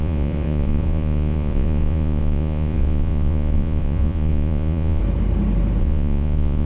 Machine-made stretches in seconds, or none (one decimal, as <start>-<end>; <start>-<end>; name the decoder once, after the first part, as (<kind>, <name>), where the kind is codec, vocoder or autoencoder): 0.0-5.0 (vocoder, Vocos); 5.8-6.7